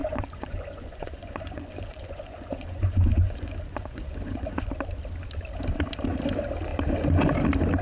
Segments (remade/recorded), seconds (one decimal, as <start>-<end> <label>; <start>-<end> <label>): 0.0-4.7 remade; 4.7-7.8 recorded